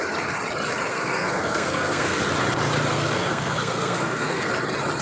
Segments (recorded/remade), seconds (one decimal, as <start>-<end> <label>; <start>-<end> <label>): 0.0-0.9 recorded; 0.9-2.2 remade; 2.2-2.9 recorded; 2.9-4.5 remade; 4.5-5.0 recorded